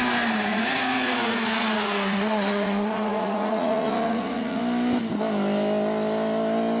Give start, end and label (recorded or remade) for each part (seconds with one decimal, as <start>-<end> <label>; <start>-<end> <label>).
0.0-0.5 recorded; 0.5-4.6 remade; 4.6-6.8 recorded